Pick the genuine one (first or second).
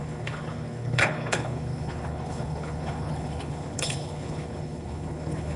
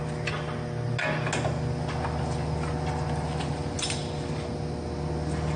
second